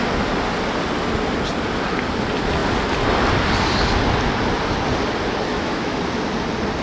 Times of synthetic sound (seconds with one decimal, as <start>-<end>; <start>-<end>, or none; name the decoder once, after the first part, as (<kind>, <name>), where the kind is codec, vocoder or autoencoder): 5.5-6.0 (autoencoder, DAC-VAE)